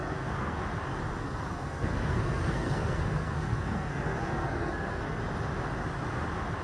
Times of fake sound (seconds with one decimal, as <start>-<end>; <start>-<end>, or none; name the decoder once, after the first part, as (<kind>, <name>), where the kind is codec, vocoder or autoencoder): 0.0-0.6 (codec, SNAC); 1.2-5.2